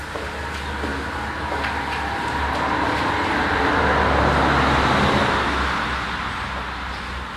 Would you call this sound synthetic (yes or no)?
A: no